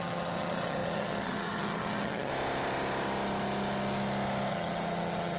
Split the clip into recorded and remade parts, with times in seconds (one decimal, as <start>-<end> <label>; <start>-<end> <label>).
0.0-2.3 remade; 2.3-4.5 recorded; 4.5-5.4 remade